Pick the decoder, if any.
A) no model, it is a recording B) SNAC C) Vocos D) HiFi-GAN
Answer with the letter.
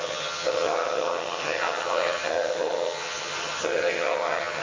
D